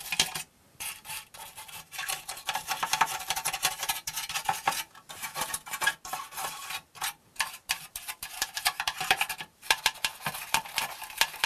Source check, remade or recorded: remade